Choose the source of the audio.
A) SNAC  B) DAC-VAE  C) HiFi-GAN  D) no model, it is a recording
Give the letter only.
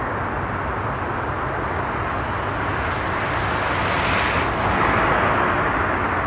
D